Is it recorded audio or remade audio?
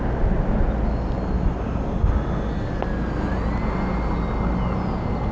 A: recorded